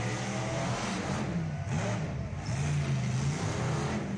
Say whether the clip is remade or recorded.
recorded